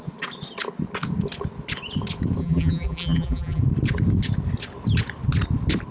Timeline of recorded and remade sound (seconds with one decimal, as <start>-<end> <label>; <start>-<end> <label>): 0.0-2.4 recorded; 2.4-3.6 remade; 3.6-5.9 recorded